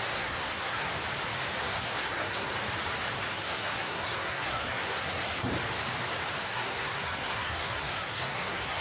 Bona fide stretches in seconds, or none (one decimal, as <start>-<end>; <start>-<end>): 0.9-1.6; 2.5-3.3; 5.5-6.4